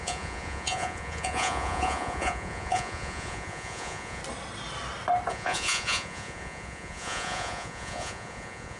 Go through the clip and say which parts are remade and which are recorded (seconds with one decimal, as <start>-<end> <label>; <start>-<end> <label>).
0.0-4.2 remade; 4.2-5.3 recorded; 5.3-8.8 remade